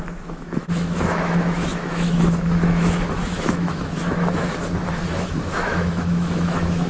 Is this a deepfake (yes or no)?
yes